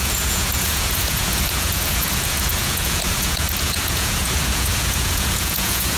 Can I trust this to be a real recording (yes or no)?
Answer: no